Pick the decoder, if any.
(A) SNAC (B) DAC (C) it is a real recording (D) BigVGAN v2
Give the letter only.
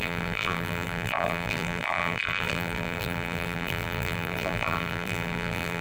D